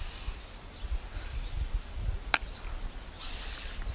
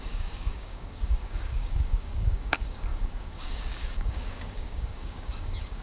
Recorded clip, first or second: first